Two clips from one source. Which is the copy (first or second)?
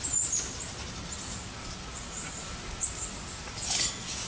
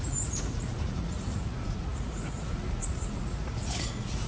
second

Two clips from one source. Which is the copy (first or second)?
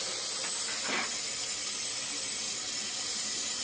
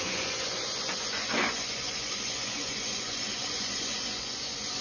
second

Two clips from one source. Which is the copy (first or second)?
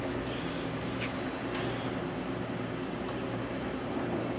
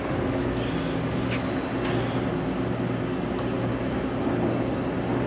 first